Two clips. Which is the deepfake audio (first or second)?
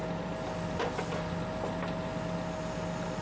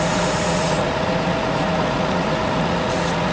second